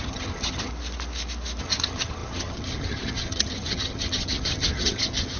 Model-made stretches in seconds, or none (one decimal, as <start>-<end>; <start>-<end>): 0.0-0.7; 1.6-5.4